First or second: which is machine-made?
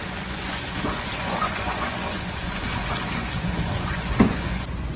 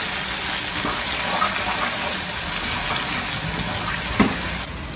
first